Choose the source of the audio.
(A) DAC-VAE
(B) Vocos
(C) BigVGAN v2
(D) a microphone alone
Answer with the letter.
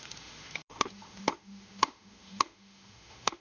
A